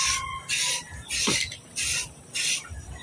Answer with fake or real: real